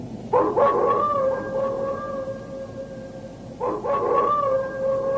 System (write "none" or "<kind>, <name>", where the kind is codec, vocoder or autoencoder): none